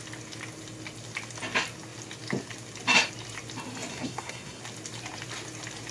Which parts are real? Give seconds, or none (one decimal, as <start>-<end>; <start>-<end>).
0.0-3.9; 4.6-5.9